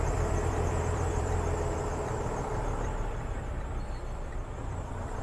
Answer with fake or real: fake